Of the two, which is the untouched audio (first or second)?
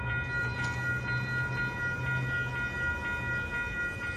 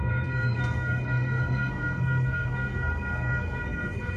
first